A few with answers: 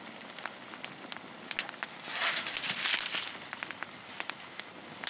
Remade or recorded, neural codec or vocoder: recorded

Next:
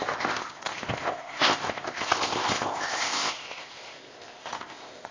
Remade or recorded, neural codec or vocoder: remade, codec, ZipCodec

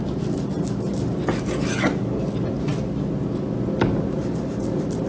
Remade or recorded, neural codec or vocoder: recorded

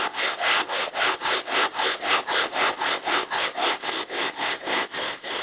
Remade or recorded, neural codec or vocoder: remade, codec, ZipCodec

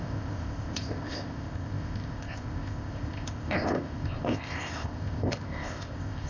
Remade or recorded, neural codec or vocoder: remade, codec, ZipCodec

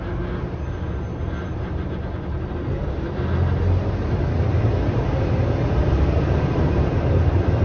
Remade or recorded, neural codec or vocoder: recorded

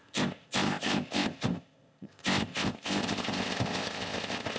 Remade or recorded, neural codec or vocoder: remade, codec, ZipCodec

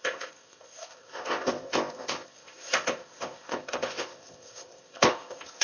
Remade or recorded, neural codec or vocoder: remade, codec, ZipCodec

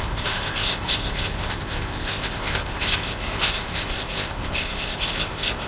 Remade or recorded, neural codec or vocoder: remade, codec, ZipCodec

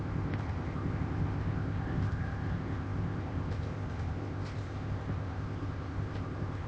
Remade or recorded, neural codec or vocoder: remade, codec, ZipCodec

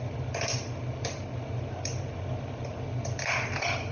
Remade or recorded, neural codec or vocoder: recorded